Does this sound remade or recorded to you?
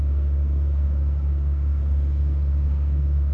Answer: remade